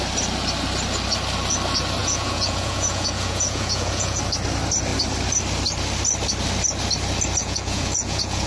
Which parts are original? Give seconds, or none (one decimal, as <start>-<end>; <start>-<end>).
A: 0.0-2.0; 4.2-7.4